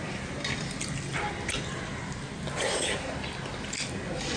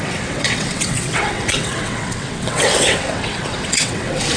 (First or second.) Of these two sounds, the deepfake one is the second